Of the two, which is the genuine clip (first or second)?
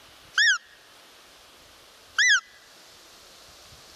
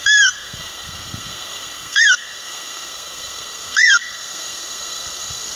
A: first